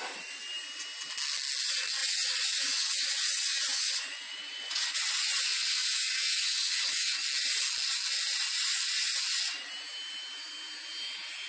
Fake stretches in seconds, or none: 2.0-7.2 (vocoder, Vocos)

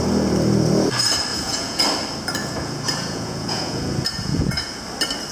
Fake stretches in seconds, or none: 1.3-1.8 (vocoder, Vocos); 2.4-4.8

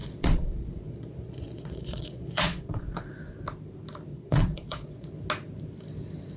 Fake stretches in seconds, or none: 0.0-3.1 (vocoder, Vocos); 4.1-5.1